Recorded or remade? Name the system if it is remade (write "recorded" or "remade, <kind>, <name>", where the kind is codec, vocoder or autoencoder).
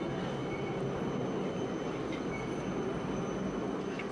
recorded